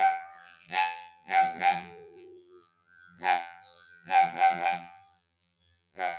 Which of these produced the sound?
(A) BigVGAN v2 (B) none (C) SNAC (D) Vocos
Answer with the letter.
A